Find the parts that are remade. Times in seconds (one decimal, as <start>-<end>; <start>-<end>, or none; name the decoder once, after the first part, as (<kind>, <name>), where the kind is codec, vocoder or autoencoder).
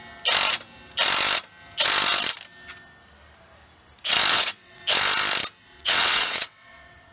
4.3-4.8 (vocoder, WaveNeXt); 5.6-7.1